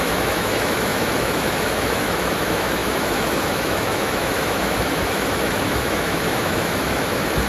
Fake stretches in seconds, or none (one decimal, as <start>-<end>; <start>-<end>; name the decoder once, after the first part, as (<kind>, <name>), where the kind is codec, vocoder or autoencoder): 0.0-7.5 (autoencoder, DAC-VAE)